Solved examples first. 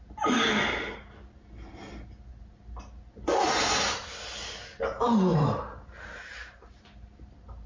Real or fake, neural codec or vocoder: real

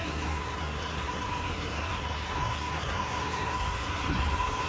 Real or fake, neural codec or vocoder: fake, codec, SNAC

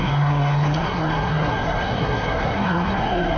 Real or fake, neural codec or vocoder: fake, codec, SNAC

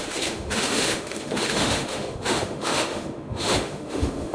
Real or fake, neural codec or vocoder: fake, autoencoder, DAC-VAE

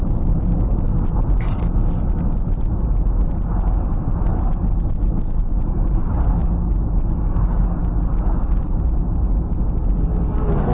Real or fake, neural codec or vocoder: real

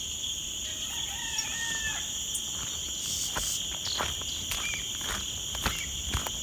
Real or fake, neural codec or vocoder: real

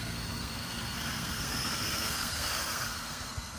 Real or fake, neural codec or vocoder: fake, codec, SNAC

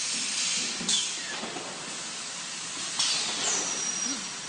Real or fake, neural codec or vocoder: real